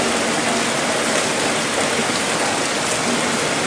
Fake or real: real